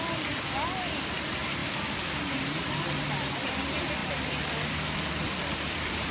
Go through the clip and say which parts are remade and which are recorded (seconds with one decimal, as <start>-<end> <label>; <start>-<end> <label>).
0.0-6.1 recorded